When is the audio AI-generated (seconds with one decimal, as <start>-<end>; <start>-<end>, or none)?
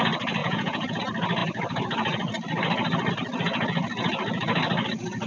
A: 0.4-1.0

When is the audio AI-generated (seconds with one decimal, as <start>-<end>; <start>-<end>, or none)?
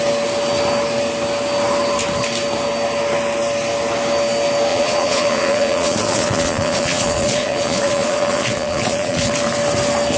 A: 4.7-9.3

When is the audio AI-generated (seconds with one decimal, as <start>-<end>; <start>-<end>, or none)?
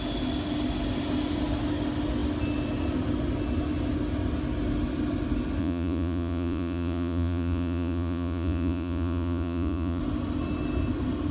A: 5.6-10.0